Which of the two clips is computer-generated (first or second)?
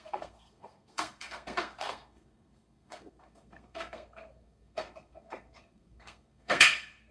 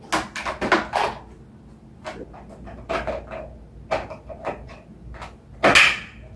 first